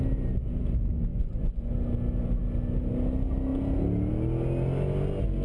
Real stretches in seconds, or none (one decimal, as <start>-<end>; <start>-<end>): 0.0-1.1; 1.7-5.4